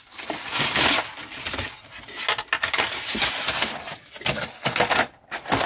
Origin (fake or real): real